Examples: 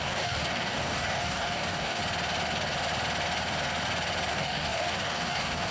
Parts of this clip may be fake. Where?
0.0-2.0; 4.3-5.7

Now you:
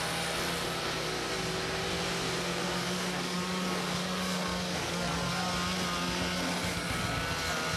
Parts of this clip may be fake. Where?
2.5-5.3

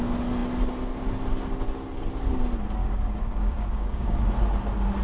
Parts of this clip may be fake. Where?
2.8-4.2

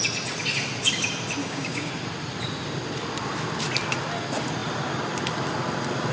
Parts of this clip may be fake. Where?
1.4-1.9

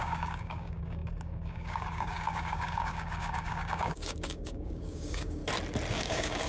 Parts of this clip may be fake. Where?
0.0-5.4; 5.9-6.5